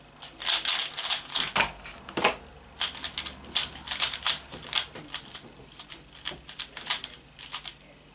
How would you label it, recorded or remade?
recorded